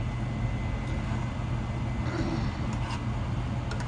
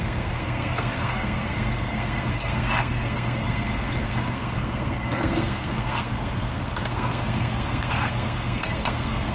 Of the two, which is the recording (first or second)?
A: first